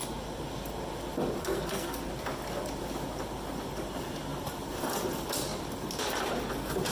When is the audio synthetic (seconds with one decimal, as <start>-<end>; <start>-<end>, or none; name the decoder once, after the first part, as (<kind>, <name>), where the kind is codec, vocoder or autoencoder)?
1.4-2.0 (codec, SNAC)